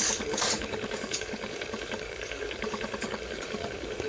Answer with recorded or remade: remade